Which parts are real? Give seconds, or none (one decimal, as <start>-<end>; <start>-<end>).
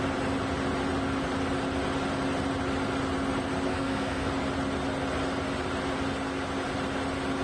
0.0-3.7; 4.3-7.4